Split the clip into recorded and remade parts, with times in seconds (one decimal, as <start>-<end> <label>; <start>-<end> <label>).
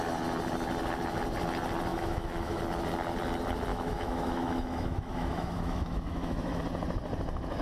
0.0-1.9 recorded; 1.9-2.6 remade; 2.6-3.7 recorded; 3.7-6.6 remade; 6.6-7.6 recorded